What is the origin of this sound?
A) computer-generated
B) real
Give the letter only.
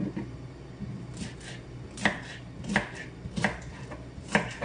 B